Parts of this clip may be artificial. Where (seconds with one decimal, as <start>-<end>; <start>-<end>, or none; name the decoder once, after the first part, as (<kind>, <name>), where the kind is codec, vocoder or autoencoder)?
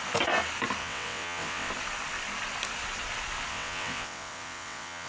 0.8-1.7 (vocoder, WaveNeXt); 3.5-5.1